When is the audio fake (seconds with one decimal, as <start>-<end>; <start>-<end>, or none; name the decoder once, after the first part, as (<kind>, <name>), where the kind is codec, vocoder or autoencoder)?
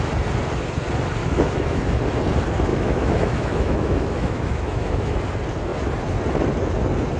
1.2-1.8 (autoencoder, DAC-VAE); 2.7-5.2